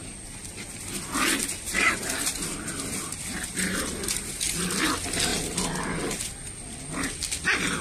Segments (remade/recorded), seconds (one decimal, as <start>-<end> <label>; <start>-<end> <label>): 0.0-7.8 recorded